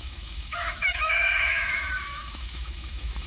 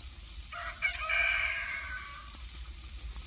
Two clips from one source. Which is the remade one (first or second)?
first